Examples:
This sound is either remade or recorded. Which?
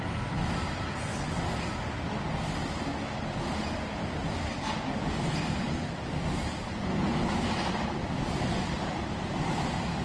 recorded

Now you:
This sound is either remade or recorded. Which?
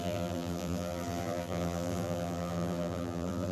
remade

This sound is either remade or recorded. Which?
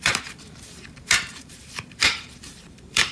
remade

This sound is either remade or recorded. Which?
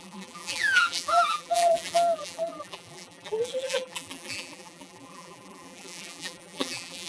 remade